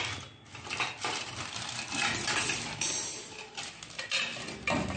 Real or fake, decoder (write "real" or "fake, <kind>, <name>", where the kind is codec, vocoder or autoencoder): real